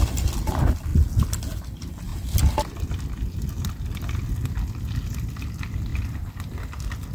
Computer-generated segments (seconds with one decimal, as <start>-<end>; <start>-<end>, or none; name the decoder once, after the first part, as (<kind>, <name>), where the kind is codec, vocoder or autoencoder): 5.9-6.5 (vocoder, BigVGAN v2)